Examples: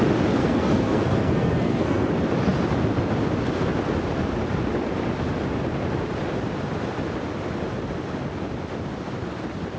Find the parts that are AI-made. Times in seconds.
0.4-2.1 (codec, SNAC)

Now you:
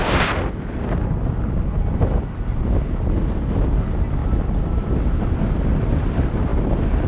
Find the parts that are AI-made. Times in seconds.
4.2-5.1 (vocoder, BigVGAN v2)

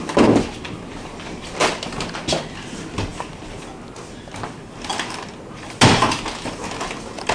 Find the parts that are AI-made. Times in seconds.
none

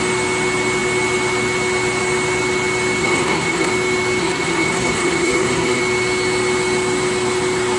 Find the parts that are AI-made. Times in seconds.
3.0-3.7 (codec, SNAC); 4.2-5.8

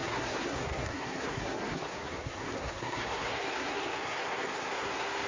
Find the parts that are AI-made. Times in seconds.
0.0-5.3 (codec, SNAC)

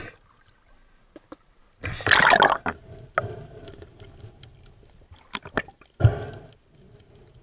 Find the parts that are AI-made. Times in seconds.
none

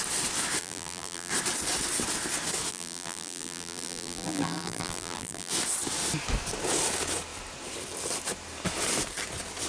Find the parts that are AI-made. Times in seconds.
0.6-1.3 (vocoder, BigVGAN v2); 2.7-5.5